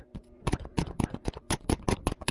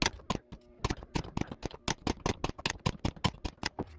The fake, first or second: first